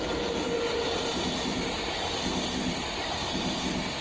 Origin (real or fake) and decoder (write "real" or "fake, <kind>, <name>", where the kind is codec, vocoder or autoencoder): real